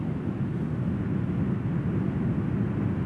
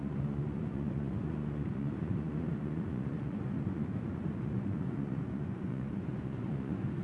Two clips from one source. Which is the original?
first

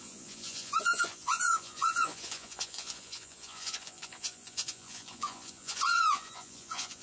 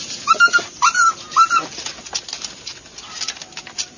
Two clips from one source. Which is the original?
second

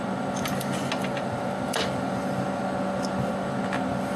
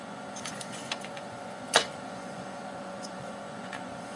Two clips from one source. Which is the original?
first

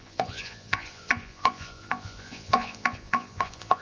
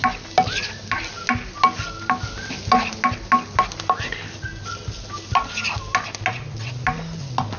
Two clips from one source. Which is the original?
second